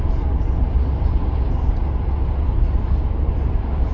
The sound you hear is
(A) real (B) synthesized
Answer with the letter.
A